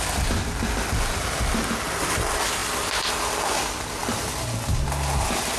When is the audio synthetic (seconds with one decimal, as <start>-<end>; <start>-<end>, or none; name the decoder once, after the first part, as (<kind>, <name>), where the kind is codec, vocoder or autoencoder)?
none